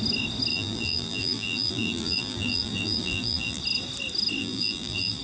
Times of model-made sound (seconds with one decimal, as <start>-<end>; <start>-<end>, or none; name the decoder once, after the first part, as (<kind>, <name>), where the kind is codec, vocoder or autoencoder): 0.5-3.6 (vocoder, BigVGAN v2); 4.4-5.2